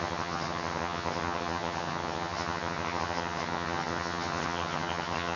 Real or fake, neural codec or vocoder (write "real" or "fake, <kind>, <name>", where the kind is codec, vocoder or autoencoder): fake, vocoder, HiFi-GAN